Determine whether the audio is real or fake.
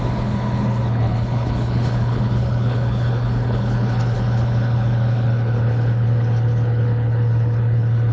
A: fake